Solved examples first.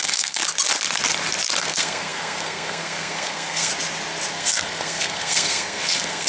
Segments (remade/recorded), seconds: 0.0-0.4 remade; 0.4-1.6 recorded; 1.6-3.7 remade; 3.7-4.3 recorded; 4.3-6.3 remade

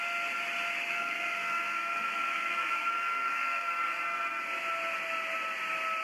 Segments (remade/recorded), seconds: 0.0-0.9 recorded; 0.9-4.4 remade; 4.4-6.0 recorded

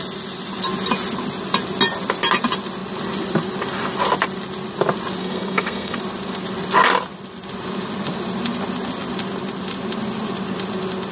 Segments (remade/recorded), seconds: 0.0-5.2 recorded; 5.2-6.0 remade; 6.0-11.1 recorded

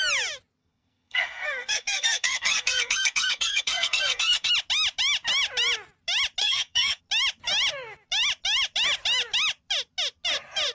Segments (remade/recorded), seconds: 0.0-0.6 recorded; 0.6-4.5 remade; 4.5-6.4 recorded; 6.4-7.0 remade; 7.0-10.7 recorded

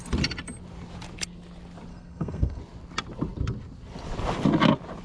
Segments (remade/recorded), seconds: 0.0-1.9 recorded; 1.9-2.6 remade; 2.6-5.0 recorded

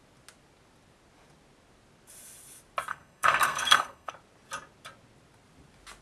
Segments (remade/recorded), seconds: 0.0-2.9 recorded; 2.9-4.1 remade; 4.1-6.0 recorded